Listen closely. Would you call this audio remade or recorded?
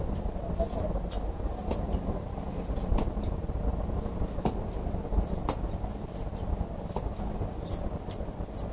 recorded